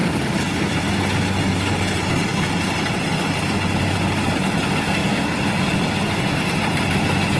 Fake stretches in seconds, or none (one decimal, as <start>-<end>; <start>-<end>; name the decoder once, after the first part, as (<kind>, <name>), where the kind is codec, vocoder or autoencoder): 0.0-0.8 (vocoder, BigVGAN v2); 5.0-6.3